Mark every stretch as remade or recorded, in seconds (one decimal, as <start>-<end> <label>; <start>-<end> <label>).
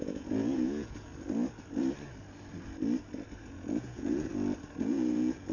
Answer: 0.0-1.1 remade; 1.1-3.4 recorded; 3.4-4.3 remade; 4.3-4.8 recorded; 4.8-5.5 remade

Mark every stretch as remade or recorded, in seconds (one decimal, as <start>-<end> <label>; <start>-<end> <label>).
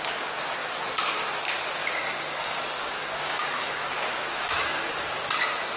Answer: 0.0-1.8 recorded; 1.8-5.3 remade; 5.3-5.8 recorded